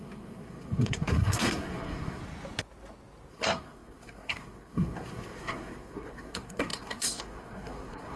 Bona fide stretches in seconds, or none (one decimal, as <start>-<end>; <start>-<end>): 2.2-3.3